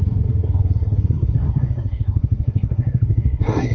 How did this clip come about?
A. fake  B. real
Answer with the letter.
A